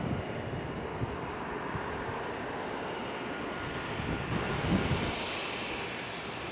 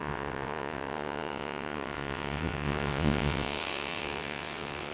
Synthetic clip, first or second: second